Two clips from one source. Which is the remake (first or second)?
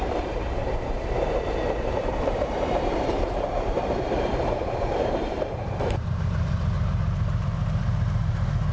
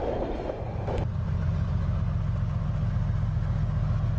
first